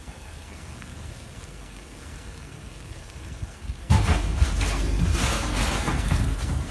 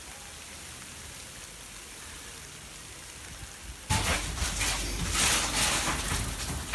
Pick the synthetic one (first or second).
first